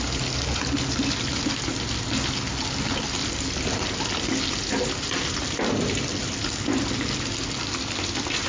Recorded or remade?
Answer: recorded